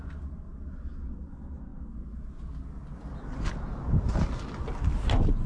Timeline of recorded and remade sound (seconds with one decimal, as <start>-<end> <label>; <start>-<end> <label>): 0.0-5.5 recorded